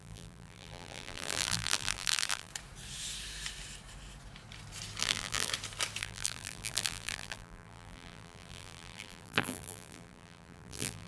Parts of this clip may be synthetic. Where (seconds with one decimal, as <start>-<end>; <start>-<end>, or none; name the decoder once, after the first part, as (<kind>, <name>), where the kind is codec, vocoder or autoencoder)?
0.0-2.5 (vocoder, BigVGAN v2); 5.0-5.5; 6.0-11.1